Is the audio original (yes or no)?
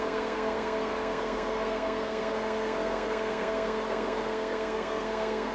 no